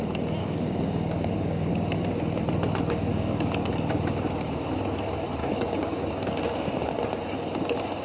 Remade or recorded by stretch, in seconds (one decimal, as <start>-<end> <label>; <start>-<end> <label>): 0.0-0.4 recorded; 0.4-1.7 remade; 1.7-3.1 recorded; 3.1-3.7 remade; 3.7-5.4 recorded; 5.4-6.4 remade; 6.4-8.0 recorded